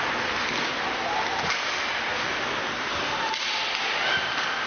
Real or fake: real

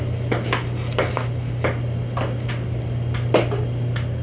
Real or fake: real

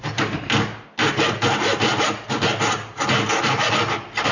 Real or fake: real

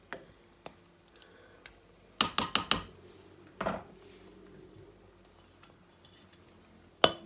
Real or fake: real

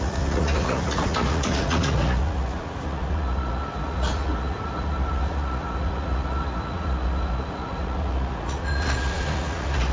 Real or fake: fake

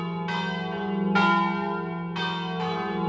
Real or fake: real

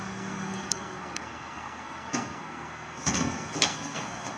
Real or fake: fake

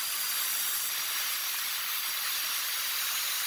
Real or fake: real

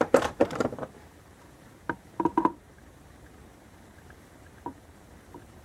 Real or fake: fake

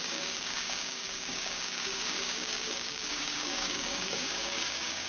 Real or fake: fake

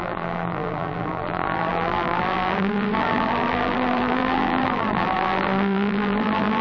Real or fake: fake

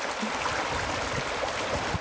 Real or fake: real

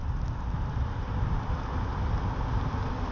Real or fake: real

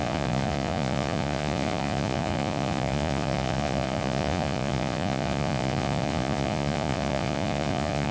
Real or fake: fake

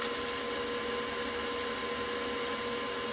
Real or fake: real